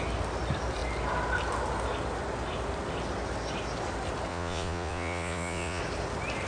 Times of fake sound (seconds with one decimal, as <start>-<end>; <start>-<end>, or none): 4.3-5.8